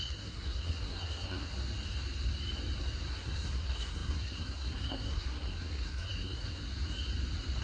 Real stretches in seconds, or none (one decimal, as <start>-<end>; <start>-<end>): 1.5-3.1; 6.6-7.6

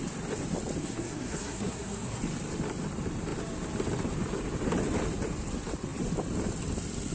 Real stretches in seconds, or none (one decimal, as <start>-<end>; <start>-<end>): 0.0-0.8; 2.2-7.1